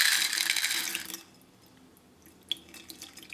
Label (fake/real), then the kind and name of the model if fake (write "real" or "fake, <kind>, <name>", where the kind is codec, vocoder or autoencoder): real